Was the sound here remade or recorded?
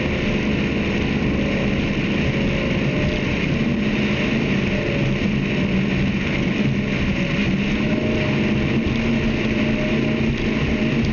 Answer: recorded